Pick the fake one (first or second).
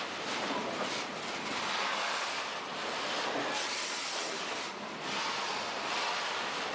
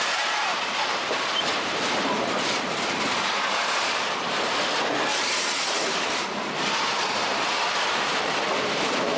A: second